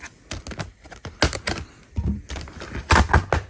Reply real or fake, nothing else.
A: real